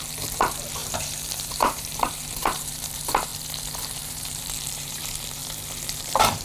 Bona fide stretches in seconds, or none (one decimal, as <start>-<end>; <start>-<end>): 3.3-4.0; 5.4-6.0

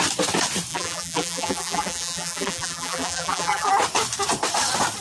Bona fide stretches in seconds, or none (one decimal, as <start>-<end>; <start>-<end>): 0.0-0.7; 3.7-5.0

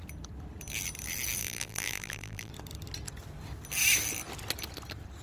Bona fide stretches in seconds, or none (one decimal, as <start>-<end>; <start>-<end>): 0.0-1.4; 2.5-5.2

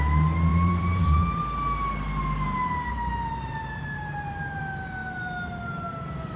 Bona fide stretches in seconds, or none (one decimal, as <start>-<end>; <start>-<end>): 0.0-0.5; 1.4-2.9; 4.6-6.4

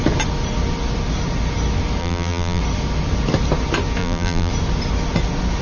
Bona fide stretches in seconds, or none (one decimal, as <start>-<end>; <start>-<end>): 0.0-2.0; 2.6-4.0; 4.5-5.6

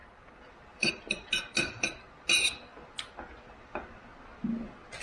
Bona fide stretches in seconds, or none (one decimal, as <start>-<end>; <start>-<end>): 0.9-5.0

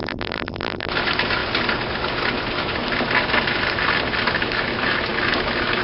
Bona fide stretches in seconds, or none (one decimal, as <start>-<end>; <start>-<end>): 0.9-5.8